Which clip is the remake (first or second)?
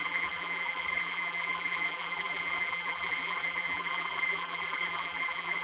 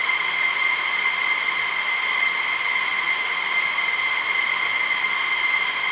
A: first